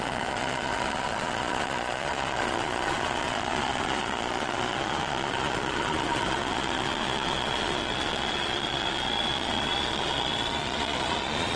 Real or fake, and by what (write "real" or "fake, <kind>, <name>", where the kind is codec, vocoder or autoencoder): fake, vocoder, Vocos